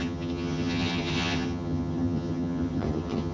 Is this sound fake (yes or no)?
yes